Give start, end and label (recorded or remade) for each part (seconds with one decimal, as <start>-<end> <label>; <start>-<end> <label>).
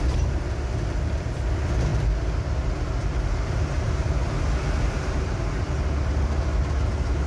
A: 0.0-7.3 recorded